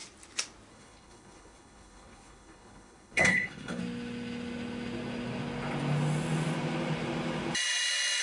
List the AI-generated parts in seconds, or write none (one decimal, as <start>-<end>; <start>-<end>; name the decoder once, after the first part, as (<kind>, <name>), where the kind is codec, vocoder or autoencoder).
0.7-3.8 (codec, HILCodec)